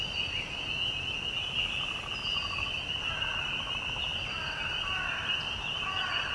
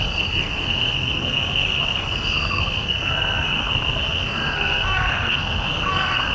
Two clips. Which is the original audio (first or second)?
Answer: first